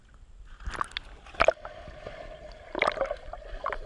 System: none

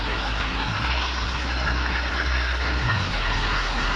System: codec, SNAC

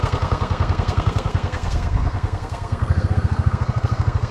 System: codec, SNAC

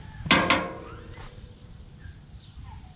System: none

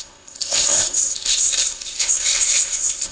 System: codec, ZipCodec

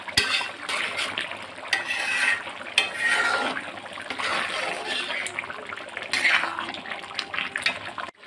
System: none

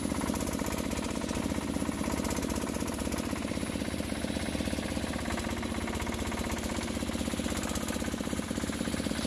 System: none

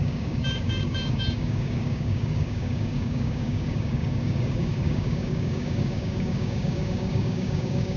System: codec, DAC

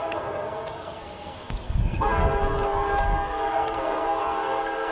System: codec, SNAC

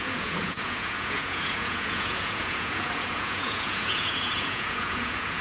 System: vocoder, Vocos